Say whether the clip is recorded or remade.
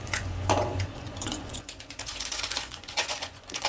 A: remade